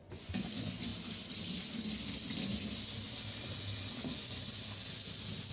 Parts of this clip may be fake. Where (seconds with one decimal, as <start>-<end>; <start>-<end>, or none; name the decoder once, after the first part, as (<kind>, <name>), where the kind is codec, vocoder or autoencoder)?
0.0-0.9 (vocoder, Vocos); 3.9-4.6